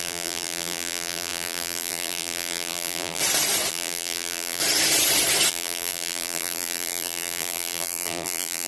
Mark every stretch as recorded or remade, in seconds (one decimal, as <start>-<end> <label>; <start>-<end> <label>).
0.0-3.2 remade; 3.2-3.7 recorded; 3.7-4.6 remade; 4.6-5.5 recorded; 5.5-8.7 remade